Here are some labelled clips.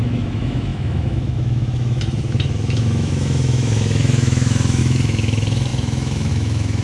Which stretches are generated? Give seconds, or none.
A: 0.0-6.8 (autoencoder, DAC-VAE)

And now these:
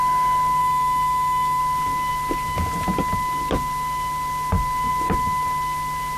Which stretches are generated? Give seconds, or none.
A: 0.6-1.6 (autoencoder, DAC-VAE)